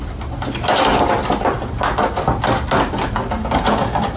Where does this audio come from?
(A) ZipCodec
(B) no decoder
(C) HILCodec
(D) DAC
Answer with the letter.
B